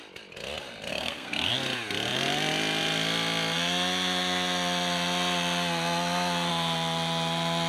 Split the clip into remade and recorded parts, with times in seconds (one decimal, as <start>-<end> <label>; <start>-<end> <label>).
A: 0.0-0.9 recorded; 0.9-1.5 remade; 1.5-7.7 recorded